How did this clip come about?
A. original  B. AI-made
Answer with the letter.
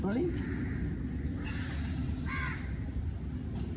A